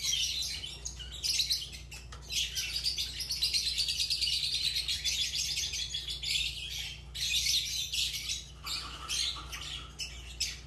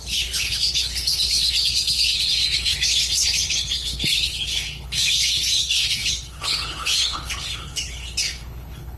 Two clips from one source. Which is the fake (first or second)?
second